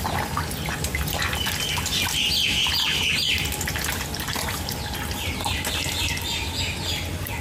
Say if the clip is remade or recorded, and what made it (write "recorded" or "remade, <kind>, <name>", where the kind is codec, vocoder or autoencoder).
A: recorded